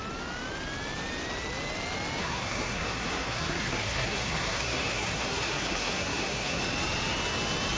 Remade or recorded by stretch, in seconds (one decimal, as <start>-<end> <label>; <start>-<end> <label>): 0.0-2.2 recorded; 2.2-6.6 remade; 6.6-7.8 recorded